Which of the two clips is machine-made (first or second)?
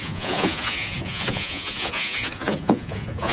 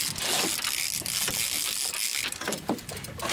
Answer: first